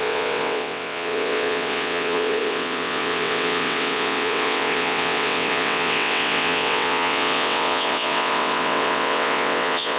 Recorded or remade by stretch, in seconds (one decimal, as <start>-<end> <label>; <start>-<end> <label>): 0.0-10.0 remade